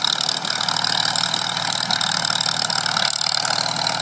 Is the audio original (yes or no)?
yes